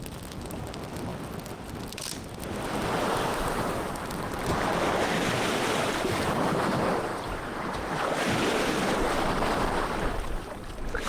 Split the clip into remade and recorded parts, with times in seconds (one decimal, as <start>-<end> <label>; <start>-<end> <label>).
0.0-7.1 remade; 7.1-7.7 recorded; 7.7-8.8 remade; 8.8-10.7 recorded; 10.7-11.1 remade